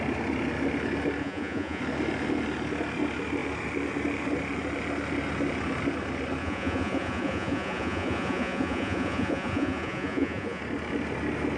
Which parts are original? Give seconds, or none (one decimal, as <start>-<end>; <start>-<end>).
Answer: 0.0-1.2; 1.8-6.4; 10.6-11.6